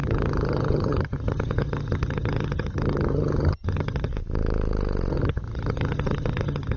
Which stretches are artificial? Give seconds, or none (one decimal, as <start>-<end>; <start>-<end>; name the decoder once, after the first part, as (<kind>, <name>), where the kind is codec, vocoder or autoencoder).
0.0-4.1 (vocoder, HiFi-GAN); 5.1-6.8